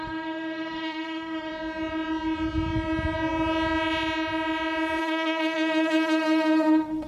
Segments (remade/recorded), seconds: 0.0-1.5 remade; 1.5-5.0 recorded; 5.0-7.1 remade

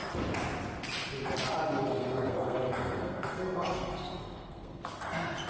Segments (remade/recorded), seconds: 0.0-1.9 recorded; 1.9-4.8 remade; 4.8-5.5 recorded

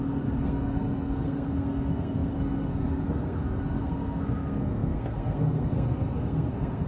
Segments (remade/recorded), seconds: 0.0-6.9 remade

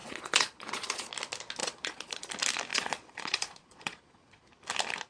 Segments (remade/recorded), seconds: 0.0-1.1 remade; 1.1-1.6 recorded; 1.6-2.3 remade; 2.3-2.7 recorded; 2.7-4.5 remade; 4.5-5.1 recorded

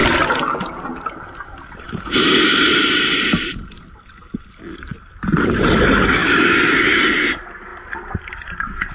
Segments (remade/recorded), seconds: 0.0-4.6 remade; 4.6-6.2 recorded; 6.2-6.8 remade; 6.8-7.7 recorded; 7.7-8.5 remade; 8.5-8.9 recorded

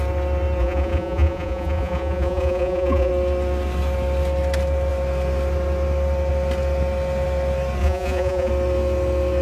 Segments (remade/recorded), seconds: 0.0-0.6 recorded; 0.6-3.1 remade; 3.1-7.8 recorded; 7.8-8.5 remade; 8.5-9.4 recorded